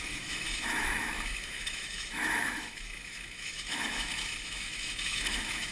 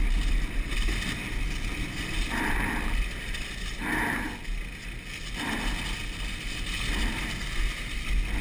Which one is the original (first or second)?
second